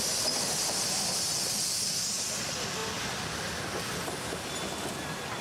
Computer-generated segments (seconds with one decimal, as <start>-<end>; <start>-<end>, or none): none